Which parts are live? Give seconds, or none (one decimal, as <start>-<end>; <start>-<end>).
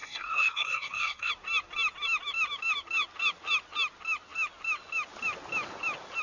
1.3-6.2